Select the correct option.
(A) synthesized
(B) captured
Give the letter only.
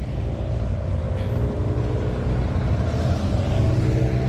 B